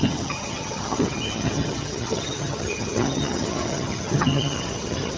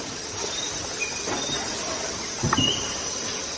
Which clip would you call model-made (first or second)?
first